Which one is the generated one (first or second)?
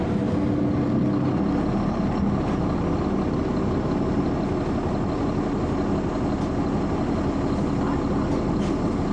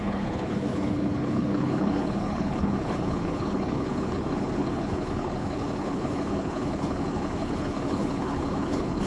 second